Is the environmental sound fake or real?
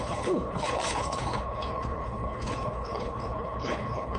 fake